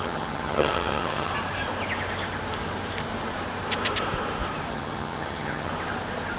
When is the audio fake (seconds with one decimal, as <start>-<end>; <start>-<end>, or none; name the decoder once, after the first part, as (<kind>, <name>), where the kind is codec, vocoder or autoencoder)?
0.0-1.3 (vocoder, HiFi-GAN); 4.7-5.7